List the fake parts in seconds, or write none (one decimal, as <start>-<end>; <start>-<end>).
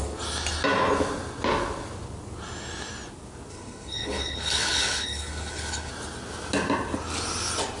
3.5-5.9